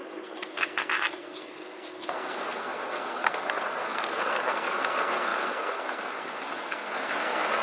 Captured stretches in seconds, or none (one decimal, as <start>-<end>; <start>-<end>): none